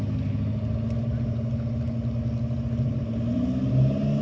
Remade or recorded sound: recorded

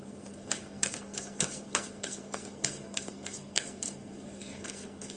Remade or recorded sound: remade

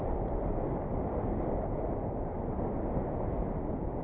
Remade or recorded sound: recorded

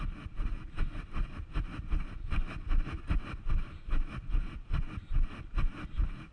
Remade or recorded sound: recorded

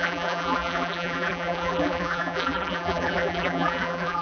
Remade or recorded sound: remade